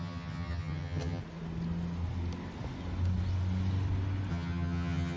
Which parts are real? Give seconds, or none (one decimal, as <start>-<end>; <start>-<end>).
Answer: 1.2-4.3